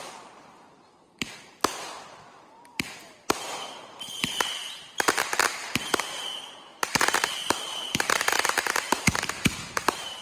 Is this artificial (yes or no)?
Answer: yes